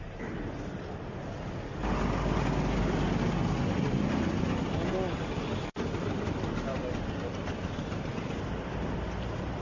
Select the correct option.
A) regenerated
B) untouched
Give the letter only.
B